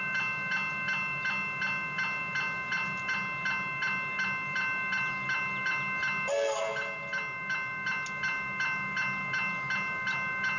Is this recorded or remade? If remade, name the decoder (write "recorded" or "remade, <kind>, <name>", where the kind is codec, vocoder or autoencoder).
recorded